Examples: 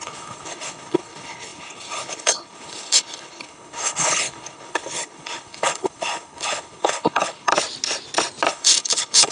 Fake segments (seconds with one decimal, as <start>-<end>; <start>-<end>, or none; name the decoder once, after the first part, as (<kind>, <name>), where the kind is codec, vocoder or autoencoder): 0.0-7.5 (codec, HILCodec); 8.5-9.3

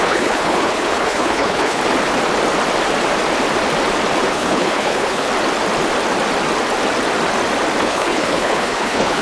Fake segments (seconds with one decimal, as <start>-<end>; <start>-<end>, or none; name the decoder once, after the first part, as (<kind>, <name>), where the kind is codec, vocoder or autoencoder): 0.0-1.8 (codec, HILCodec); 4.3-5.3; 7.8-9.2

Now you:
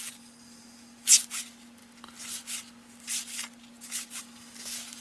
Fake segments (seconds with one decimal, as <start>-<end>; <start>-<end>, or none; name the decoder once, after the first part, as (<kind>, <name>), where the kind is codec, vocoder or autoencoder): none

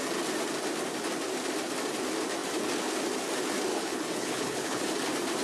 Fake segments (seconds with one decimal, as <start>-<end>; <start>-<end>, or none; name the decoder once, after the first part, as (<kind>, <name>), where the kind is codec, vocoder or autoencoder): 3.7-4.8 (codec, HILCodec)

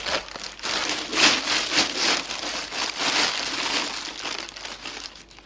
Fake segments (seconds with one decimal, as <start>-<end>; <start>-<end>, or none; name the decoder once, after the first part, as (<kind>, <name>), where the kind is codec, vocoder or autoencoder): none

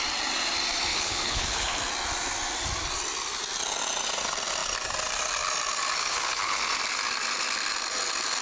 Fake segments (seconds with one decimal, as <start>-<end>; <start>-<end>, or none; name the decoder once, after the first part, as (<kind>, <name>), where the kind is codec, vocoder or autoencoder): 0.9-1.8 (codec, HILCodec); 6.0-6.6

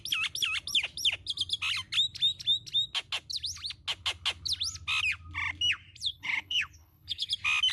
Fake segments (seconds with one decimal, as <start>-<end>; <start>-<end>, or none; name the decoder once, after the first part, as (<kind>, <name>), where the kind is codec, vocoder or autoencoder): 6.1-7.3 (codec, HILCodec)

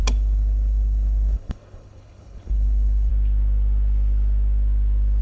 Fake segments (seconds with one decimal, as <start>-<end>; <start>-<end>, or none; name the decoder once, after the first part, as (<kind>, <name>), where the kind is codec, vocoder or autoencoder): 0.0-3.1 (codec, HILCodec)